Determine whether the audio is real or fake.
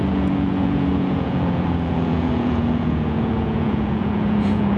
fake